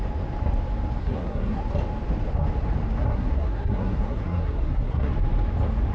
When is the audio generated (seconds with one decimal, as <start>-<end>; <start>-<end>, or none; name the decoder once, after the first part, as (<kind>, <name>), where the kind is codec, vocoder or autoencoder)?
1.0-1.6 (codec, SNAC); 3.0-5.1